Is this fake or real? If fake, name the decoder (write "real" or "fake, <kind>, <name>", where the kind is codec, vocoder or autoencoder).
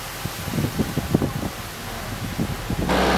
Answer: real